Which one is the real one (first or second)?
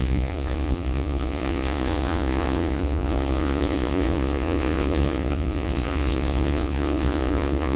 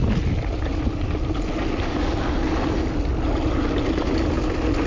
second